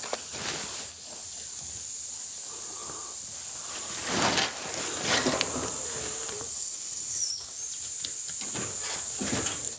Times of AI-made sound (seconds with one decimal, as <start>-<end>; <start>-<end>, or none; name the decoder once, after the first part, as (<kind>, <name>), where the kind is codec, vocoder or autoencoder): 6.5-7.2 (codec, HILCodec)